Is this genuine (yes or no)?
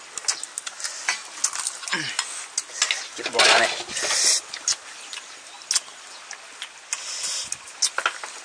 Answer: yes